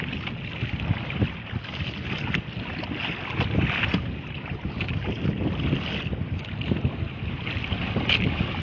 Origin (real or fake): real